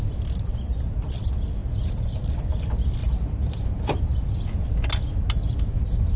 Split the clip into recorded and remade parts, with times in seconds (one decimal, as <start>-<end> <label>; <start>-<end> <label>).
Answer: 0.0-3.0 recorded; 3.0-4.0 remade; 4.0-6.2 recorded